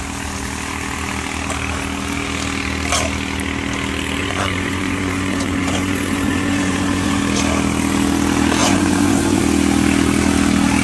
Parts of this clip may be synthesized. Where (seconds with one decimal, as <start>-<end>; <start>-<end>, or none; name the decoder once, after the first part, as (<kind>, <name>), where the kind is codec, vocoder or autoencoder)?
4.2-7.2 (vocoder, Vocos); 8.6-9.4